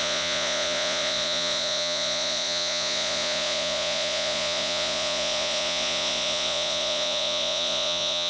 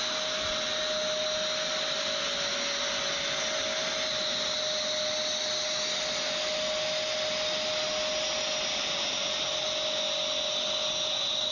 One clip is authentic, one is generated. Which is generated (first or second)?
first